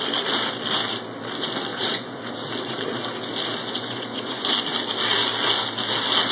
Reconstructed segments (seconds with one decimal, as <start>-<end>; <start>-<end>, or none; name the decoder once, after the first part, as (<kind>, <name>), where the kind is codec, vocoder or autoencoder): 1.7-2.3 (vocoder, Vocos); 3.6-4.5